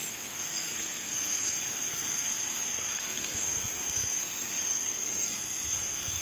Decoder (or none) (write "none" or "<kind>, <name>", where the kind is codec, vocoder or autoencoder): codec, SNAC